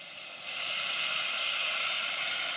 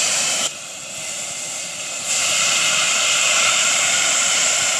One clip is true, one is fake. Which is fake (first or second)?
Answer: second